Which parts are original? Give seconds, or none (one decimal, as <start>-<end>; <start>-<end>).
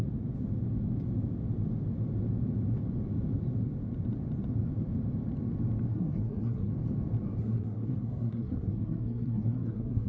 0.0-5.9; 6.7-7.4